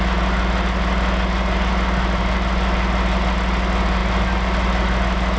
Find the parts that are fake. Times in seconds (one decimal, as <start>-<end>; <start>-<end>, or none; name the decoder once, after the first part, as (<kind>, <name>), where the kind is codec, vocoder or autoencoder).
none